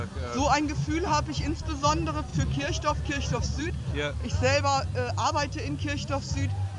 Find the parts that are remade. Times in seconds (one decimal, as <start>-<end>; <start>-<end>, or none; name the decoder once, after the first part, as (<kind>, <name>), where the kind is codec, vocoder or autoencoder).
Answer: 2.3-3.9 (vocoder, BigVGAN v2)